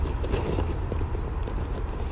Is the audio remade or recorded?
recorded